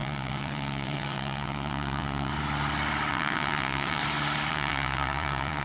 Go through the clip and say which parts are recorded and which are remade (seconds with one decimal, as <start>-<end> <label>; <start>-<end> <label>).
0.0-2.3 remade; 2.3-3.1 recorded; 3.1-4.0 remade; 4.0-4.5 recorded; 4.5-5.6 remade